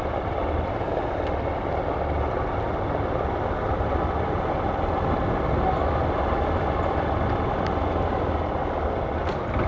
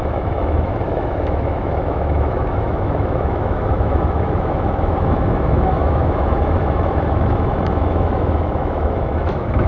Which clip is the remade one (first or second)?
second